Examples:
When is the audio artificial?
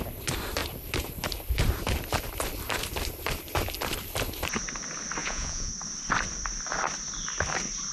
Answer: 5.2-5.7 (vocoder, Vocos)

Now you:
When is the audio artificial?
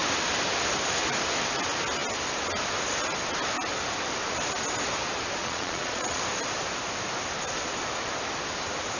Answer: 5.4-6.2 (vocoder, Vocos)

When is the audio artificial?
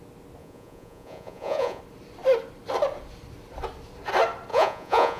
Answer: 0.4-1.8 (vocoder, Vocos); 4.5-5.2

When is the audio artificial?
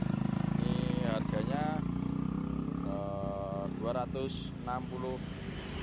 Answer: none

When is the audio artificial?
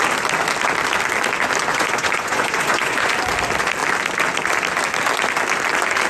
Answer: 1.7-3.1 (vocoder, Vocos)